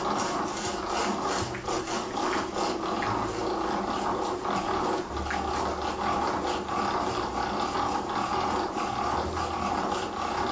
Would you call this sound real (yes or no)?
yes